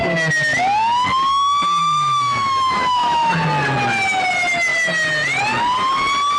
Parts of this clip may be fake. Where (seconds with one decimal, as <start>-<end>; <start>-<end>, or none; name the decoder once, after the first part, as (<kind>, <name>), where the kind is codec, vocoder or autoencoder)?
1.8-3.3 (autoencoder, DAC-VAE)